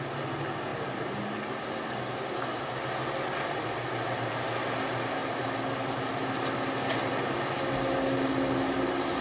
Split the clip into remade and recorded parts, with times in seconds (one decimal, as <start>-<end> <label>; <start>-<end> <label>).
0.0-0.7 recorded; 0.7-1.2 remade; 1.2-9.2 recorded